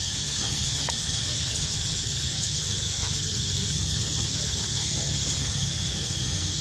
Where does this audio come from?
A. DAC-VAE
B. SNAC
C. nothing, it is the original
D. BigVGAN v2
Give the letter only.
B